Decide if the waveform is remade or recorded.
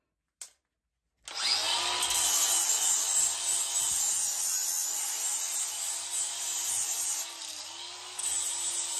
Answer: recorded